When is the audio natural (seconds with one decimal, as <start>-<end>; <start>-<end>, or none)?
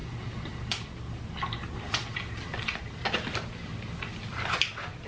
0.0-5.1